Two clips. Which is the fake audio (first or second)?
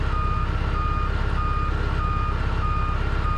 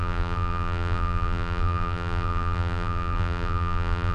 second